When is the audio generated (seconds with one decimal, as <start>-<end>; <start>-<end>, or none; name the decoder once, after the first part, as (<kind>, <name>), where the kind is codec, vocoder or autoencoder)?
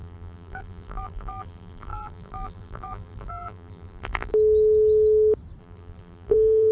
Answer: 0.0-4.3 (vocoder, BigVGAN v2); 5.6-6.7